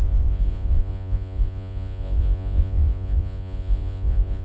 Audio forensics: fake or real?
fake